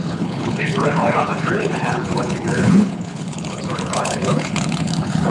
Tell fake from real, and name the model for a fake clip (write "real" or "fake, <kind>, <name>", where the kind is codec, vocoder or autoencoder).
fake, codec, HILCodec